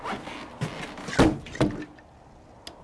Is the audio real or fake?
real